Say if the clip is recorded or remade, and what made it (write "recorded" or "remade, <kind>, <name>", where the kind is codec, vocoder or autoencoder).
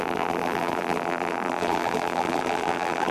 remade, vocoder, BigVGAN v2